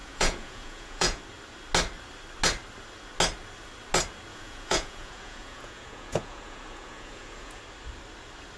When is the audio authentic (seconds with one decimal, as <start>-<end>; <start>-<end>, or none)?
1.2-4.3; 7.6-8.6